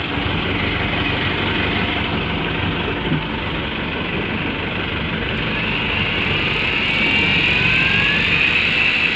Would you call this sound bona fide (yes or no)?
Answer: yes